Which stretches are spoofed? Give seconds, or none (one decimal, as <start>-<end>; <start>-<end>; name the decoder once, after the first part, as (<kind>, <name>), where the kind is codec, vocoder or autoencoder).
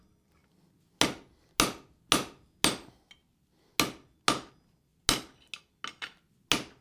none